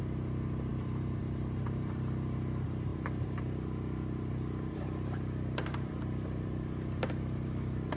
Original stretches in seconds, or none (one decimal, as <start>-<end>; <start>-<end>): none